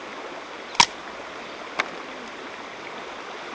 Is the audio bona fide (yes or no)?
yes